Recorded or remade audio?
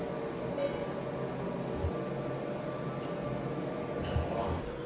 recorded